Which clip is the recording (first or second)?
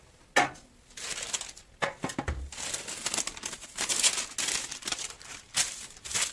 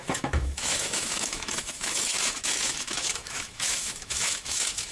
first